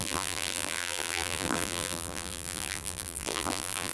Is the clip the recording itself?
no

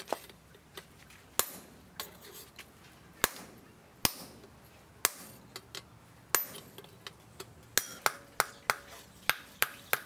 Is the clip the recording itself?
yes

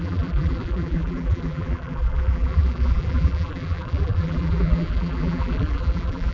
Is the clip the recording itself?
no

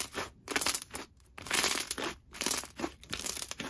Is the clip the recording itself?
no